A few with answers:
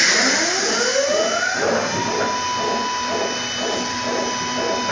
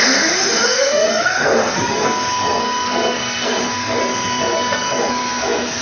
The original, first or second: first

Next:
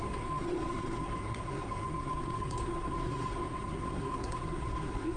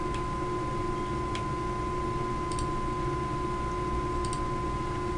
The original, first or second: second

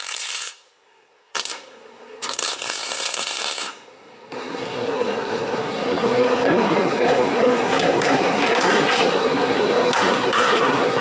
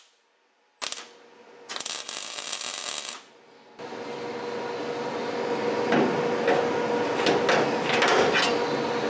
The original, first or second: second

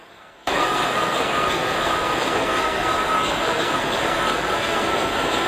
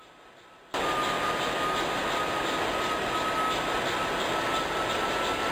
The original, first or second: second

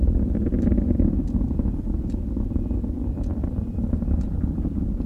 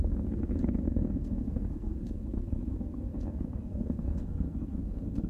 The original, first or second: first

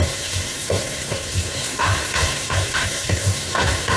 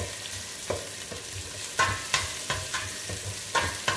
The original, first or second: second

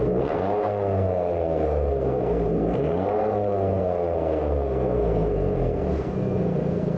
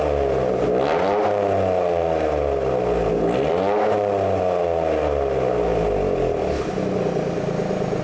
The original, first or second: second